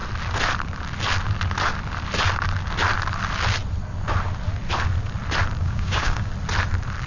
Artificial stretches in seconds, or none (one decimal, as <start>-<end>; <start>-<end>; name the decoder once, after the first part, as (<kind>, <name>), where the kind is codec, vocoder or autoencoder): 5.6-6.3 (codec, DAC)